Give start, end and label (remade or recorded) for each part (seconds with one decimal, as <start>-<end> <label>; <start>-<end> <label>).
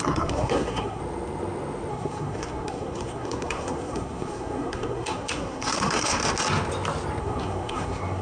0.0-1.0 remade; 1.0-1.9 recorded; 1.9-6.2 remade; 6.2-7.2 recorded; 7.2-8.2 remade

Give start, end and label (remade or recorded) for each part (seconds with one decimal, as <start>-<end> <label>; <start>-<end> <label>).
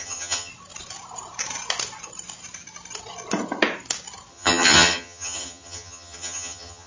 0.0-0.5 remade; 0.5-4.3 recorded; 4.3-6.9 remade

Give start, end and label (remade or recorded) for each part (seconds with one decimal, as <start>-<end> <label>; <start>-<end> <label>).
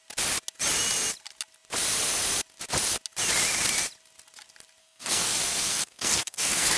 0.0-4.8 recorded; 4.8-6.8 remade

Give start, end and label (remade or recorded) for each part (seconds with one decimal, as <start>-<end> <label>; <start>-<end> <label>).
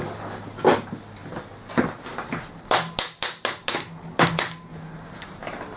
0.0-5.8 recorded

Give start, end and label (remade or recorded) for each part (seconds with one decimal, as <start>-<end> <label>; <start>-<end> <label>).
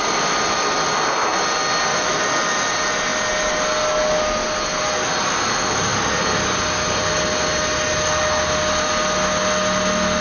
0.0-10.2 recorded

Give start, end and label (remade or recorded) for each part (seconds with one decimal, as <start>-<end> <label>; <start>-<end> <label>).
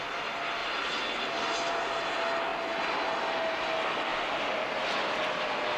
0.0-5.8 recorded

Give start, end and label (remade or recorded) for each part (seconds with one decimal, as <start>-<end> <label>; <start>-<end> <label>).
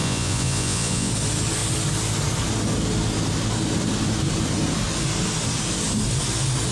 0.0-1.1 remade; 1.1-6.7 recorded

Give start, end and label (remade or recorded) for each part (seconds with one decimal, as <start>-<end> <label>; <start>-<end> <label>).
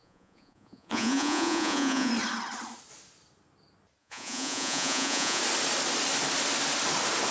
0.0-2.1 remade; 2.1-4.0 recorded; 4.0-5.4 remade; 5.4-7.3 recorded